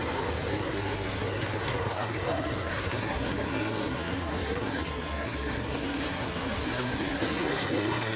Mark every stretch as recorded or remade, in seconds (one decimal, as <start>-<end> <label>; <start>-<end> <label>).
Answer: 0.0-0.5 recorded; 0.5-8.2 remade